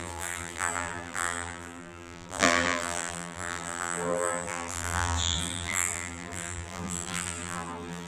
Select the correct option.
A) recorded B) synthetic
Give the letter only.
B